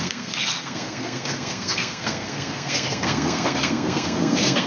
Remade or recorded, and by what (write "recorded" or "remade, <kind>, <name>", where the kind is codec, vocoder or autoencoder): remade, codec, SNAC